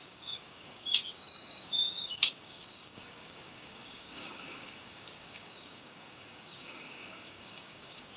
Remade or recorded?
remade